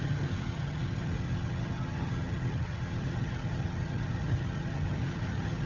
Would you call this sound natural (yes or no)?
no